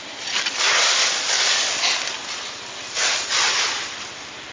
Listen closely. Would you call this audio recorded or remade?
recorded